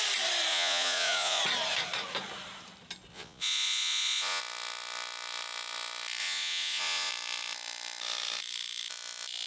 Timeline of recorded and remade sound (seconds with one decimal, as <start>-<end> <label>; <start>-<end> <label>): 0.0-0.5 recorded; 0.5-1.4 remade; 1.4-3.1 recorded; 3.1-4.4 remade; 4.4-6.2 recorded; 6.2-7.1 remade; 7.1-9.5 recorded